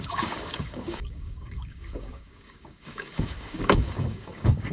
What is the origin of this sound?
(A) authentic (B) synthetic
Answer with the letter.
B